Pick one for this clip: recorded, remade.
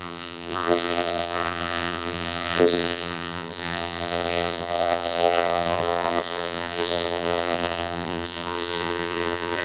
remade